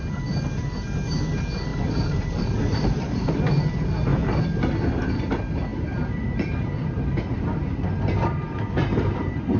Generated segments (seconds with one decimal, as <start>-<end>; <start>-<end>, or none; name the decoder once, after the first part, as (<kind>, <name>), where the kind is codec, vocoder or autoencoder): 1.7-3.4 (vocoder, BigVGAN v2); 5.7-9.6